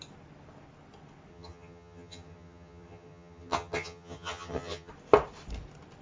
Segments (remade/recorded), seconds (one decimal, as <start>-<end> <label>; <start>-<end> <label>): 0.0-1.3 recorded; 1.3-4.9 remade; 4.9-6.0 recorded